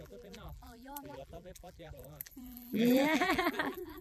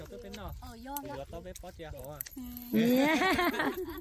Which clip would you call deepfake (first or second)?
first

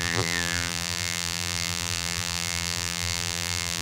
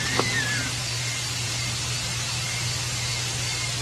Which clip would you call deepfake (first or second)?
first